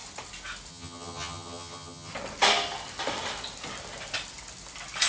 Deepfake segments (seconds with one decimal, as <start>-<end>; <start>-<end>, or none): 0.7-2.1